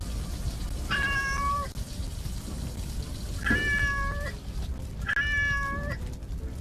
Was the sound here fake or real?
real